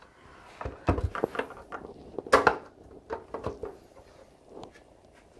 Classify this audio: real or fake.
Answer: real